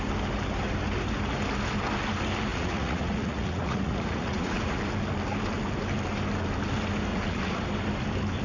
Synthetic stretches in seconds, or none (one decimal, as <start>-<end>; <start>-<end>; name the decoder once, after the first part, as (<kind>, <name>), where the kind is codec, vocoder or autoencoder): 2.5-4.8 (vocoder, Vocos); 7.1-7.6